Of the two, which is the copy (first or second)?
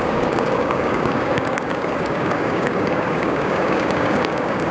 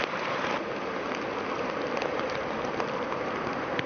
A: first